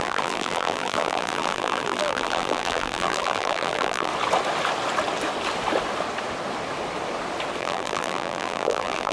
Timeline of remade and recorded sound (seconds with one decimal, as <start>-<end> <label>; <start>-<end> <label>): 0.0-4.1 remade; 4.1-7.6 recorded; 7.6-9.1 remade